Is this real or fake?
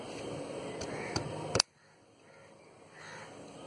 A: fake